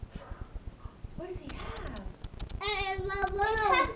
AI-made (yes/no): no